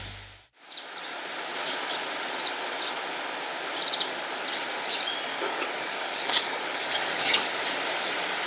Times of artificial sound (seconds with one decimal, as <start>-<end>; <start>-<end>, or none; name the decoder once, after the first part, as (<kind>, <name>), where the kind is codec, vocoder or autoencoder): 5.3-7.6 (codec, DAC)